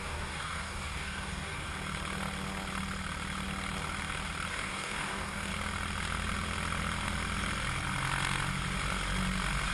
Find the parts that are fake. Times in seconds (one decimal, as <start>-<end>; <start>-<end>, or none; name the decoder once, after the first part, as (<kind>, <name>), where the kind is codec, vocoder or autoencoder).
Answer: 0.0-1.7 (codec, DAC); 4.5-5.5